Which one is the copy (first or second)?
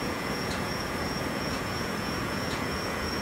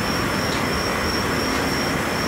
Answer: first